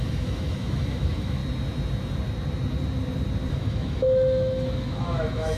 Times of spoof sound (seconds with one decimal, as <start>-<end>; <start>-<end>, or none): 0.0-1.4; 3.5-5.6